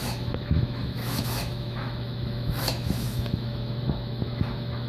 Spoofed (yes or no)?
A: yes